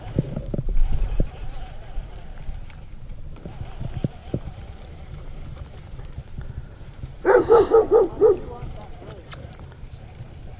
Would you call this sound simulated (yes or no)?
yes